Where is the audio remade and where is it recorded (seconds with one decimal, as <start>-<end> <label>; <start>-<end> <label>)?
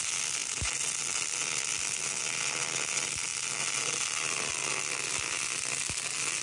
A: 0.0-6.4 recorded